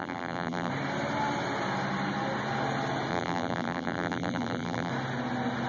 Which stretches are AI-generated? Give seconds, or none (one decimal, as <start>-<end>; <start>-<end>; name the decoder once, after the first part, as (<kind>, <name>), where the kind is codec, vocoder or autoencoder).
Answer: 0.0-0.7 (vocoder, BigVGAN v2); 3.1-4.9